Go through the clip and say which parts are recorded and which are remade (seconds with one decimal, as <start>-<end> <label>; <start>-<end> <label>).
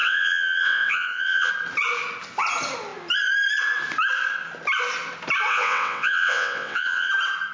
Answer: 0.0-1.5 remade; 1.5-5.5 recorded; 5.5-7.1 remade; 7.1-7.5 recorded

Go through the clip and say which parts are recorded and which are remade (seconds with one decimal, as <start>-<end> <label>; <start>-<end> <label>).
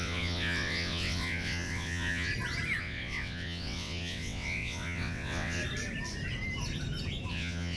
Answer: 0.0-2.3 remade; 2.3-2.8 recorded; 2.8-5.6 remade; 5.6-7.3 recorded; 7.3-7.8 remade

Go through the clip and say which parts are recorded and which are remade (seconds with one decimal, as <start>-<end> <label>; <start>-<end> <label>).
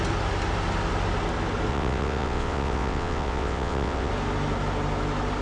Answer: 0.0-1.7 recorded; 1.7-4.1 remade; 4.1-5.4 recorded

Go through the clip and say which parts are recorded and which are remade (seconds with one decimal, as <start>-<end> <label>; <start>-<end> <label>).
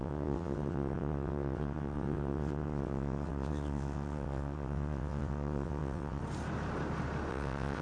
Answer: 0.0-6.2 remade; 6.2-7.3 recorded; 7.3-7.8 remade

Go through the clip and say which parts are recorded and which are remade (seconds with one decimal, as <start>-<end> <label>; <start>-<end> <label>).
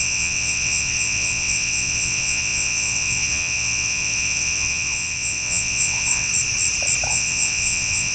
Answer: 0.0-6.3 remade; 6.3-7.1 recorded; 7.1-8.1 remade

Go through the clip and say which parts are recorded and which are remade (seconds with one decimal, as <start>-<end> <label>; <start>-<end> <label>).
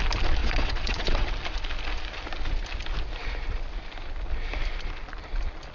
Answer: 0.0-0.4 recorded; 0.4-1.3 remade; 1.3-5.7 recorded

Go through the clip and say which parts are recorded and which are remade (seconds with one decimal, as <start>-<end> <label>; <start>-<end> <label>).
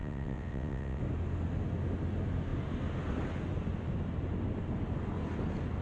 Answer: 0.0-1.0 remade; 1.0-5.8 recorded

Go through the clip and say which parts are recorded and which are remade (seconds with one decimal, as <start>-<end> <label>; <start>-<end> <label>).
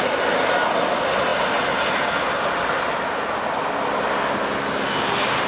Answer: 0.0-5.5 recorded